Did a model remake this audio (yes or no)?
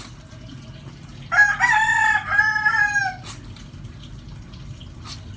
no